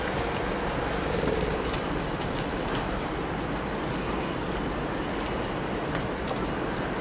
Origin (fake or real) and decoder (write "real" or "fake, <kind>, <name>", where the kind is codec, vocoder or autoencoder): fake, vocoder, BigVGAN v2